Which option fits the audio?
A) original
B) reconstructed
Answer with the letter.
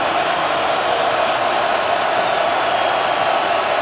B